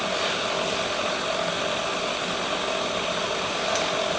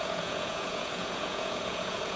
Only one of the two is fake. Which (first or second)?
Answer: second